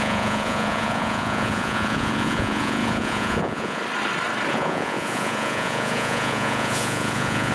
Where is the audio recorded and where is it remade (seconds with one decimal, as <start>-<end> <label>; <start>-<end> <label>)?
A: 0.0-3.8 remade; 3.8-4.5 recorded; 4.5-7.5 remade